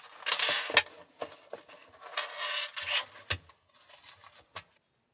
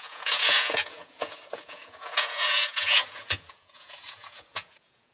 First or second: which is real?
first